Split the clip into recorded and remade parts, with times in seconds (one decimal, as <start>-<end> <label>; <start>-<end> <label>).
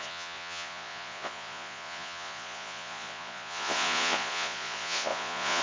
0.0-5.6 remade